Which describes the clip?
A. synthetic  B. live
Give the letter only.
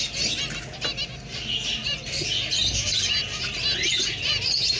B